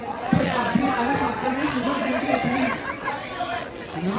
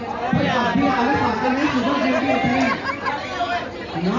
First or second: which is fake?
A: first